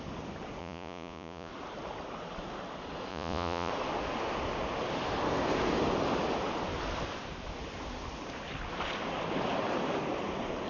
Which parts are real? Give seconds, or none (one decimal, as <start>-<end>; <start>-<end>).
0.0-0.6; 1.5-3.1; 3.7-10.7

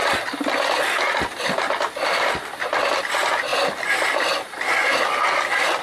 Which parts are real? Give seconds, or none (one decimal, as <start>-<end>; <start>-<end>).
0.0-5.8

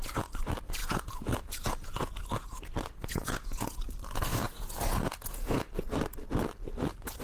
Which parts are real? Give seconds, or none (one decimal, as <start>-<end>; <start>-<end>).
0.0-0.8; 2.2-3.0; 3.9-4.4; 5.8-7.2

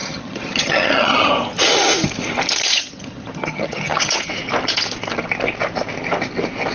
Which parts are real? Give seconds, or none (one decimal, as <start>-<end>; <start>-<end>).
1.3-2.7; 4.3-6.7

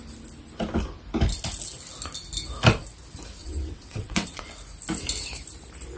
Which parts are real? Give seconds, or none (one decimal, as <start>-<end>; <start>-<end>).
0.0-3.4; 4.4-6.0